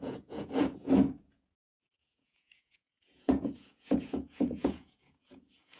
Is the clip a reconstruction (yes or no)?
yes